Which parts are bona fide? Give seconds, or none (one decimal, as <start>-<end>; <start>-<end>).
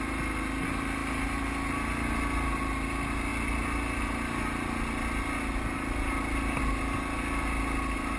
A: 0.0-8.2